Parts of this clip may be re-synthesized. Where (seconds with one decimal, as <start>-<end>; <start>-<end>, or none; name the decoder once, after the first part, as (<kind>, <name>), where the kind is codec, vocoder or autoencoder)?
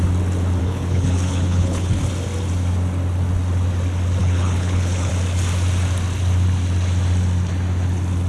0.6-2.0 (codec, HILCodec); 4.2-5.1